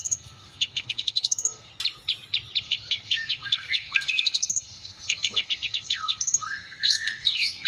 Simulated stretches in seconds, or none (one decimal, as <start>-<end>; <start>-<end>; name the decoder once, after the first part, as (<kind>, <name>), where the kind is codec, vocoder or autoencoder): 0.0-1.7 (codec, SNAC); 2.6-7.7